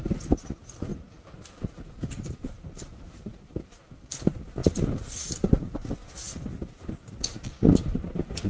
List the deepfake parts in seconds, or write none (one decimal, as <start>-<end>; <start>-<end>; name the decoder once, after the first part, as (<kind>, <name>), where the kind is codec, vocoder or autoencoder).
0.0-0.9 (vocoder, BigVGAN v2); 1.5-4.6; 5.3-5.8; 7.7-8.5